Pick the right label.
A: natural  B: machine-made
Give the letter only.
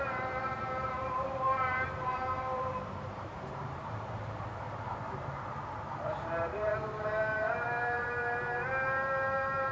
B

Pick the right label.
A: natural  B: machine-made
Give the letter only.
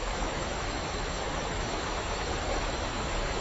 B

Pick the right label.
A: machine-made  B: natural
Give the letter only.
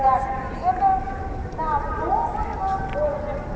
B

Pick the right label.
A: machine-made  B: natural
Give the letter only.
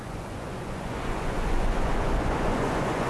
A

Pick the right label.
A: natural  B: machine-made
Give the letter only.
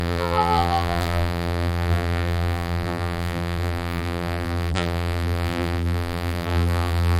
B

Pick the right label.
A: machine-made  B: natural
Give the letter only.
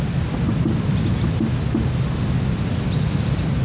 B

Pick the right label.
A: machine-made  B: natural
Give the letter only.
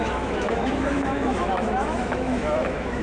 A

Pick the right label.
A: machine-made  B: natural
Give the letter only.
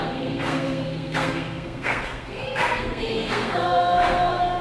A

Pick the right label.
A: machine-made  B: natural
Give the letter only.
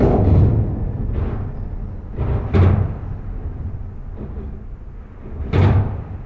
B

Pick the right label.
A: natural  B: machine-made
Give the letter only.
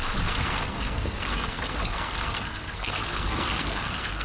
B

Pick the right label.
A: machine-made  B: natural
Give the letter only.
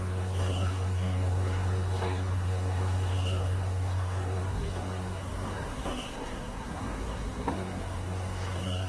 A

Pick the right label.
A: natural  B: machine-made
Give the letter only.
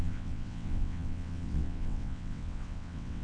B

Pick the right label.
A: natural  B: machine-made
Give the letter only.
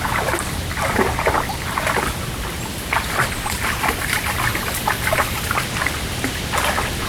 A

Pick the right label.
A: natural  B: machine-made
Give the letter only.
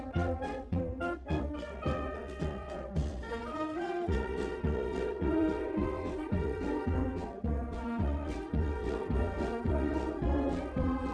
B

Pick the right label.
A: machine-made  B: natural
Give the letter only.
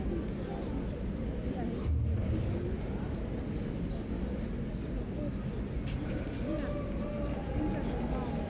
B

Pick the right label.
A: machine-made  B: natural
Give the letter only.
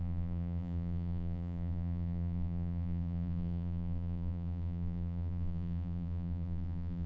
A